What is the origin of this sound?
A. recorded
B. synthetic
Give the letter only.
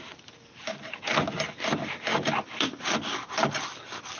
A